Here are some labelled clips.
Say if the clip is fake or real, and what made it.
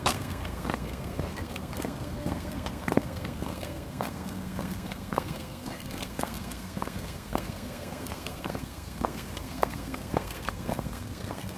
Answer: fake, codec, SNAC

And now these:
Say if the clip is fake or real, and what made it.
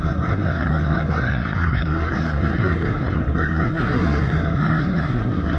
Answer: fake, codec, SNAC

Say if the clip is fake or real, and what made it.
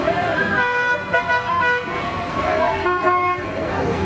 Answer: fake, codec, SNAC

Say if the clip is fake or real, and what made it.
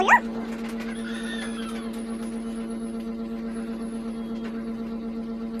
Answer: real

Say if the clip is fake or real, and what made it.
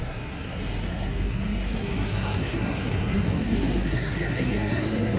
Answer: fake, codec, SNAC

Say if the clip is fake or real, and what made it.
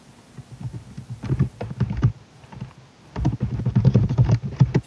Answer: real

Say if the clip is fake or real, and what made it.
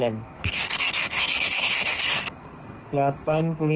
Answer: fake, codec, SNAC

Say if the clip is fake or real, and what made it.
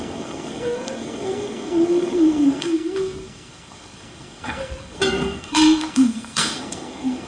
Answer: fake, codec, SNAC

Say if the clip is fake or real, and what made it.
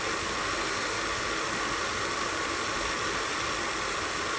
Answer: real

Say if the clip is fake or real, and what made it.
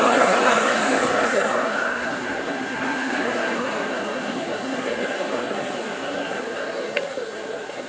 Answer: fake, codec, SNAC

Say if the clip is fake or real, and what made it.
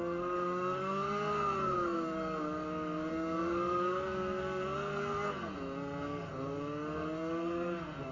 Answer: fake, codec, SNAC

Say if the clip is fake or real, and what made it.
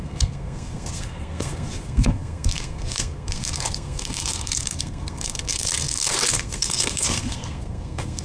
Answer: fake, codec, SNAC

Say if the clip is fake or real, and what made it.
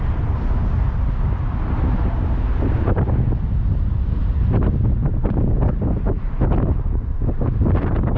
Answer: real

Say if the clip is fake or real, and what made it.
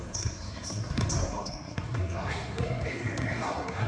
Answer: fake, codec, SNAC